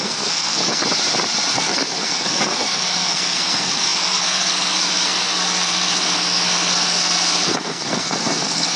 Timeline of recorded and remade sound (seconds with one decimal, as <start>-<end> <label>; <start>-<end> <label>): 0.0-0.8 remade; 0.8-1.5 recorded; 1.5-8.8 remade